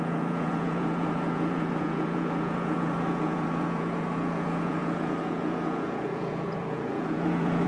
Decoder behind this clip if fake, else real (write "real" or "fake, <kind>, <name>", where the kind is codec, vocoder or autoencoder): fake, vocoder, Vocos